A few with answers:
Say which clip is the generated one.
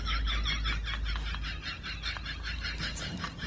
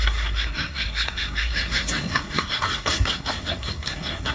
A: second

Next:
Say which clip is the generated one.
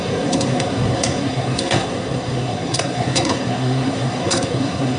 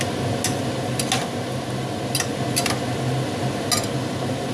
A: first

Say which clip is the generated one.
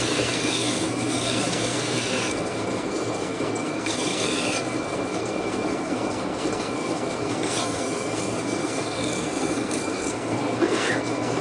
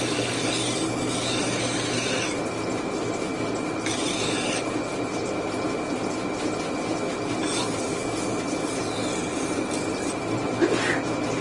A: first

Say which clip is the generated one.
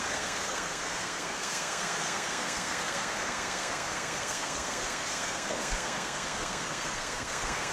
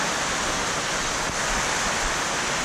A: first